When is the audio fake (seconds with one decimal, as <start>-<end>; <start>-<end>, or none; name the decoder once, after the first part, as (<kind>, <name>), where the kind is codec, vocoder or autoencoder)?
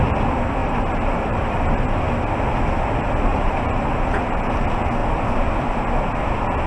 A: 0.6-2.0 (vocoder, BigVGAN v2); 3.3-4.6